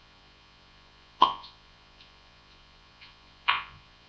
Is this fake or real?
fake